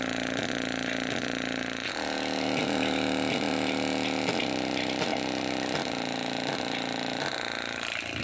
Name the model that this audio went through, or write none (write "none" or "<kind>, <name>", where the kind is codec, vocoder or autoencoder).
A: none